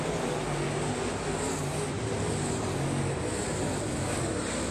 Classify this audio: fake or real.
real